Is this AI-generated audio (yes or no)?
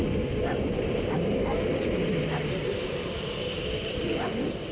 no